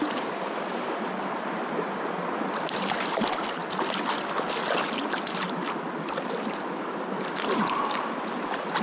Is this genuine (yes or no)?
yes